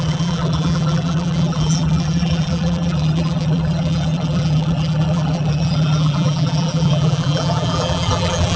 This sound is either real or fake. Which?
fake